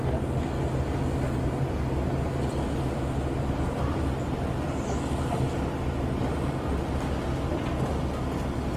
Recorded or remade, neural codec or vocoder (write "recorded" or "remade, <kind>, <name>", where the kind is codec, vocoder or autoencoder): recorded